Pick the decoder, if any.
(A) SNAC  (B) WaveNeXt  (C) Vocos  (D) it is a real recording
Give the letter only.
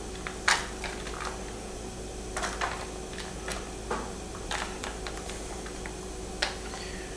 D